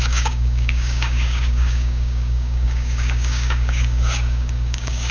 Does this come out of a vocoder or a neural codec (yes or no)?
yes